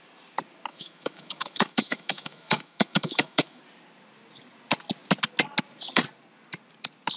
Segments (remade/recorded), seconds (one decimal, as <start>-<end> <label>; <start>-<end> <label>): 0.0-0.7 recorded; 0.7-3.6 remade; 3.6-7.2 recorded